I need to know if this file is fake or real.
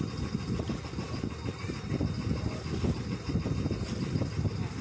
real